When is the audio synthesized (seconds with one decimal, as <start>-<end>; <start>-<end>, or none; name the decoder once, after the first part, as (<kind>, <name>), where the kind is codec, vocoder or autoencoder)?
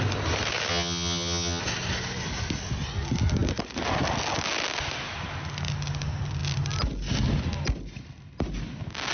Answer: 0.7-1.6 (vocoder, HiFi-GAN)